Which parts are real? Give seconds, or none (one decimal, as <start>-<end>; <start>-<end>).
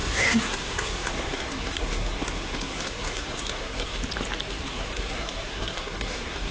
4.0-4.5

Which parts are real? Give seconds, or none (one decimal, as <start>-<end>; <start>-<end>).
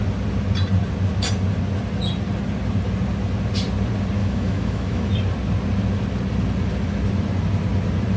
0.0-4.2; 5.1-8.2